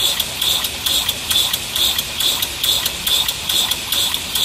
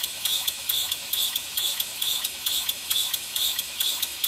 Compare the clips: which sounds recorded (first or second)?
first